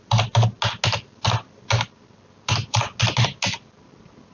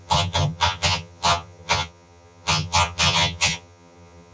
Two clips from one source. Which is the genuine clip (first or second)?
first